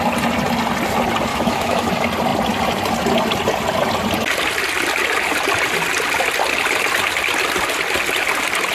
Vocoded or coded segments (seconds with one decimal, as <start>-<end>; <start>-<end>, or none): 1.3-1.9